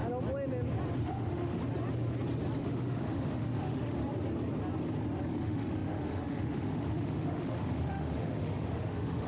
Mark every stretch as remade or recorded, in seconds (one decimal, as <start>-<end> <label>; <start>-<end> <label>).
0.0-1.0 recorded; 1.0-1.6 remade; 1.6-2.6 recorded; 2.6-4.0 remade; 4.0-5.3 recorded; 5.3-9.3 remade